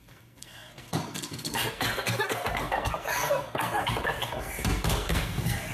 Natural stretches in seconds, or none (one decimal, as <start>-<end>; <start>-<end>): none